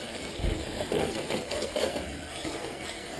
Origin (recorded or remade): remade